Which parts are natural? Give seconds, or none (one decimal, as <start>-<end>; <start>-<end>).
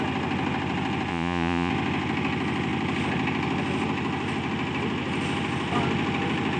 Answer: 0.0-1.1; 1.7-6.6